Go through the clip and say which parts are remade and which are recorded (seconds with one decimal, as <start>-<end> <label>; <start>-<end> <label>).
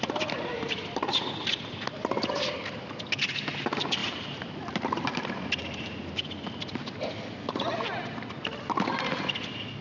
0.0-4.0 remade; 4.0-9.3 recorded; 9.3-9.8 remade